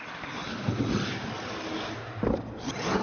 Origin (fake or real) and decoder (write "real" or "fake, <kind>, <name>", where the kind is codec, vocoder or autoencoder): real